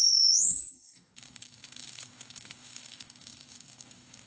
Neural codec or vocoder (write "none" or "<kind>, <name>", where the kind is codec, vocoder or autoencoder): codec, DAC